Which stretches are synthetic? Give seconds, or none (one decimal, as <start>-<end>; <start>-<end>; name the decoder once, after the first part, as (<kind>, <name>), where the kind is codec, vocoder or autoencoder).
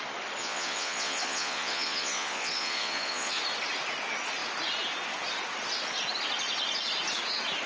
0.4-3.4 (vocoder, Vocos)